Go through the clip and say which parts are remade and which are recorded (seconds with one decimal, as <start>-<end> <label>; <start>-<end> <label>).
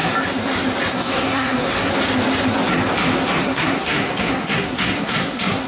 0.0-0.9 recorded; 0.9-1.9 remade; 1.9-3.4 recorded; 3.4-5.7 remade